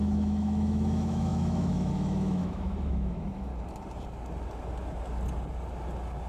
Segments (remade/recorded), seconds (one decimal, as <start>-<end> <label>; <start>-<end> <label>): 0.0-3.5 remade; 3.5-6.3 recorded